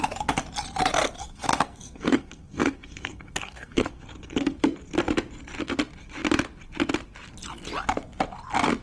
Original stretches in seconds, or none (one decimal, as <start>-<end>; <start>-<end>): 0.0-1.0; 4.6-8.8